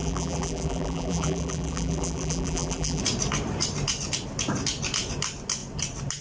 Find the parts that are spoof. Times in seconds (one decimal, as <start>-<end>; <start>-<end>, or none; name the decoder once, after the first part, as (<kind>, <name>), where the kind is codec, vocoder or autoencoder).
0.0-3.0 (vocoder, BigVGAN v2)